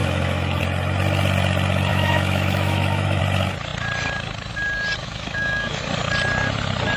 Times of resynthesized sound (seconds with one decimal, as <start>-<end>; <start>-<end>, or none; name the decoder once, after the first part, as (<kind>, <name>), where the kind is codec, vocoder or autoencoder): 0.0-0.6 (autoencoder, DAC-VAE); 1.9-3.2; 5.0-5.8